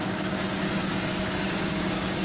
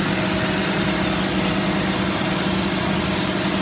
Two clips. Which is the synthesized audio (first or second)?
first